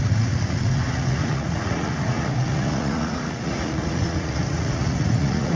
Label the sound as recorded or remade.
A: remade